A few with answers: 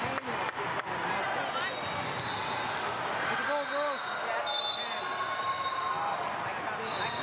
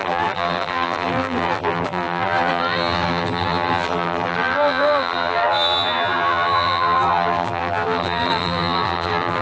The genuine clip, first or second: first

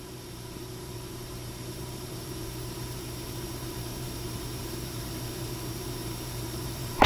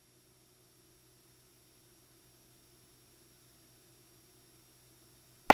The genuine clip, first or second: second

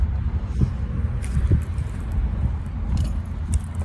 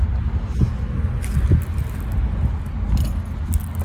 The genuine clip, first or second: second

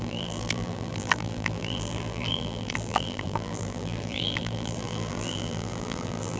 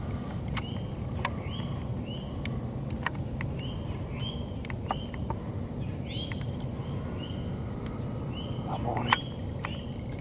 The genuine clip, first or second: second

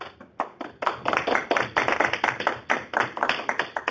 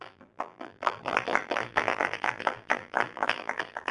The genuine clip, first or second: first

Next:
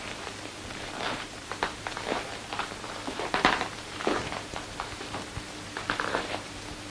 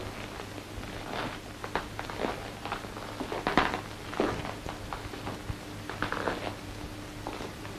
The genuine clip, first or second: second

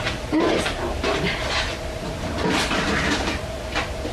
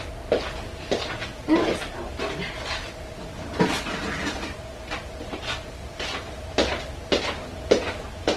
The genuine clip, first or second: second